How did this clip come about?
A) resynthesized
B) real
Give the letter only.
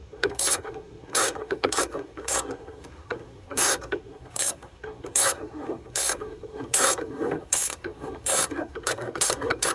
A